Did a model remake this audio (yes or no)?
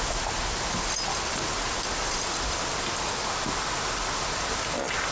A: no